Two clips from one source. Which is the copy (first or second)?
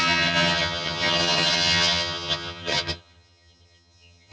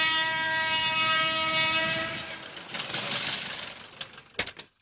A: first